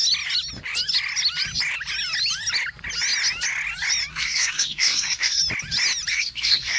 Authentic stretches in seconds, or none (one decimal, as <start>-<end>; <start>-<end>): 0.0-4.1; 5.4-6.1